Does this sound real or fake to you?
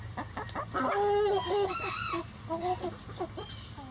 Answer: real